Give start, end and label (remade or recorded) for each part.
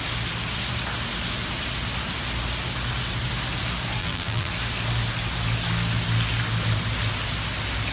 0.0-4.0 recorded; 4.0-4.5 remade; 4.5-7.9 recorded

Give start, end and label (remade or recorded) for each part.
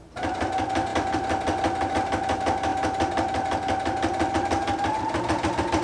0.0-5.8 recorded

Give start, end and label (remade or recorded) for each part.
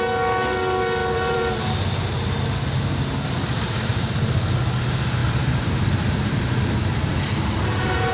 0.0-1.0 recorded; 1.0-1.7 remade; 1.7-3.9 recorded; 3.9-4.6 remade; 4.6-5.2 recorded; 5.2-7.2 remade; 7.2-8.1 recorded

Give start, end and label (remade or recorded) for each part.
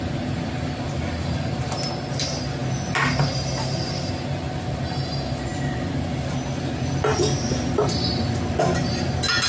0.0-9.5 recorded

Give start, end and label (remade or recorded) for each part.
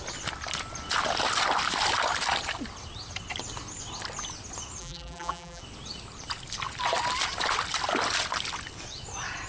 0.0-4.8 recorded; 4.8-5.6 remade; 5.6-9.5 recorded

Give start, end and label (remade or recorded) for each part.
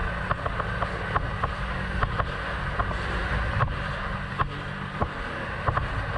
0.0-2.8 recorded; 2.8-3.9 remade; 3.9-6.2 recorded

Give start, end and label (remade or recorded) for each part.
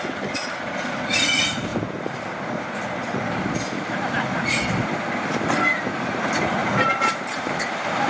0.0-6.6 recorded; 6.6-8.1 remade